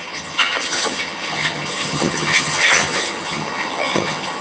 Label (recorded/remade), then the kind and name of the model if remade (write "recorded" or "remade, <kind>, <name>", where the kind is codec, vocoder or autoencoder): remade, vocoder, HiFi-GAN